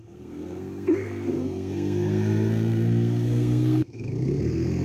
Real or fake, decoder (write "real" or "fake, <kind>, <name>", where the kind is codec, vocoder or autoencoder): fake, codec, SNAC